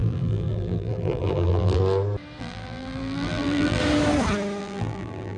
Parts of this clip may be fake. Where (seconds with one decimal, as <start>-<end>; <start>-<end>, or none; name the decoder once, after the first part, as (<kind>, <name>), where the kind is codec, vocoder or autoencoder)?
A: 0.0-1.8 (vocoder, BigVGAN v2); 2.4-3.8; 4.6-5.4